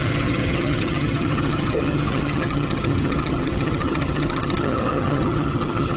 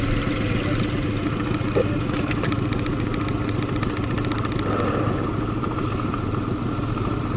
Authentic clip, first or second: second